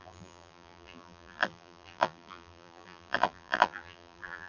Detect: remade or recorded remade